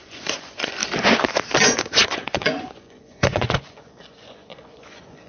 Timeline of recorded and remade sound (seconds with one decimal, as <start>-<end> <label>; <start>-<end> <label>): 0.0-0.8 remade; 0.8-1.6 recorded; 1.6-5.3 remade